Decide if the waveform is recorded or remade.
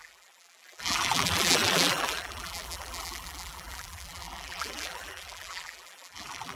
remade